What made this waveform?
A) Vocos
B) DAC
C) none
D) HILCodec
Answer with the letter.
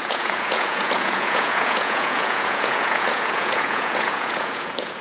A